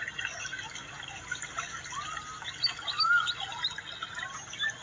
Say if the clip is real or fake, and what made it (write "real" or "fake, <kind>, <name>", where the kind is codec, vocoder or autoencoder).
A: real